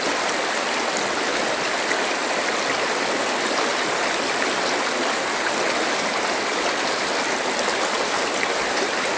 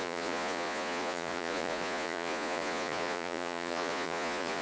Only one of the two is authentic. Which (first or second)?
first